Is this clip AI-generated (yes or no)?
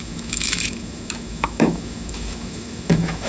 yes